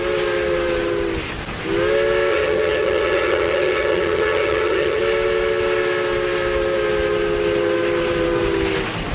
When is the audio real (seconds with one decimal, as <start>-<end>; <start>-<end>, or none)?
0.0-2.3; 5.0-9.1

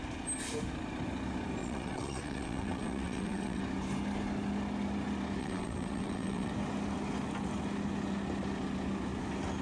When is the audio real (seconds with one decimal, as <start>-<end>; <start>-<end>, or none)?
0.0-1.6; 3.6-5.4; 6.5-9.6